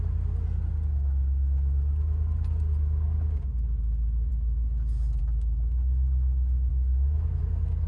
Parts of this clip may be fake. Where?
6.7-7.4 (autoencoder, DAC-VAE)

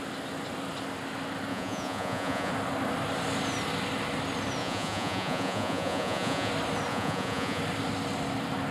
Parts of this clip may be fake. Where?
1.5-2.5 (vocoder, Vocos); 4.6-6.5; 6.9-7.6

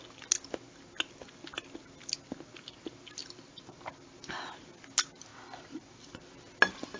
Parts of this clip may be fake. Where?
3.2-3.8 (vocoder, BigVGAN v2); 5.3-6.2

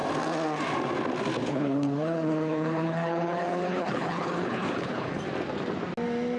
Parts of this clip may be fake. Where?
1.4-5.2 (codec, HILCodec)

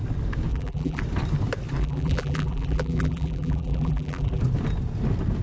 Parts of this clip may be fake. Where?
0.5-1.0 (vocoder, BigVGAN v2); 1.8-4.4

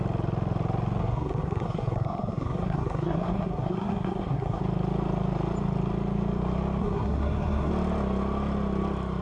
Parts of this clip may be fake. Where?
1.0-4.6 (codec, SNAC); 6.8-7.7

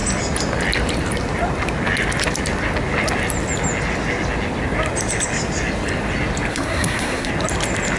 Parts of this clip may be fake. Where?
6.5-7.3 (codec, SNAC)

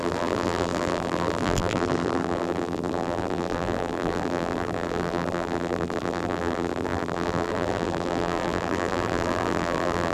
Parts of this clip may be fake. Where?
0.0-10.1 (vocoder, BigVGAN v2)